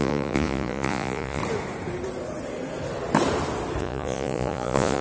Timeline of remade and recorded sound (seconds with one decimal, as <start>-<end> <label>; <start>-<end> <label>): 0.0-1.4 remade; 1.4-3.8 recorded; 3.8-5.0 remade